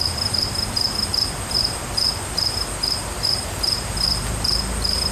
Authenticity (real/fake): real